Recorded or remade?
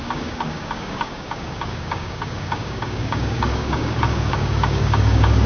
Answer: remade